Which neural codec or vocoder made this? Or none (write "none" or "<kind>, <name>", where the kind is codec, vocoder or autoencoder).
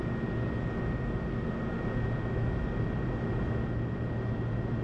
none